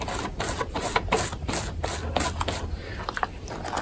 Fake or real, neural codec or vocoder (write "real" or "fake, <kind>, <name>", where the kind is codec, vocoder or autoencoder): real